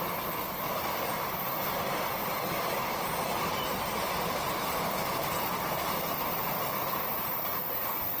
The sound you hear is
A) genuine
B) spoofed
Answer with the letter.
A